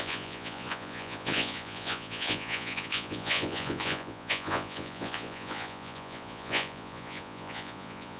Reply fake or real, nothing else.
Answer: fake